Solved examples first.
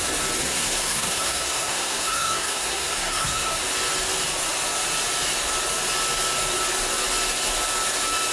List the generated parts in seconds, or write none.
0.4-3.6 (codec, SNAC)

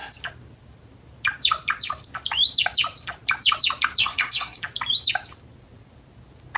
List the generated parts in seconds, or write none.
4.0-4.6 (codec, SNAC)

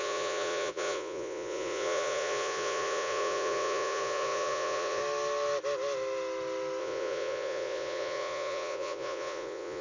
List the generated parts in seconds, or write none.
0.0-5.0 (vocoder, Vocos); 6.8-9.8

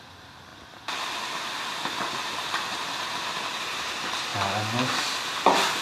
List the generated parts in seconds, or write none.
0.0-4.3 (vocoder, BigVGAN v2); 5.3-5.8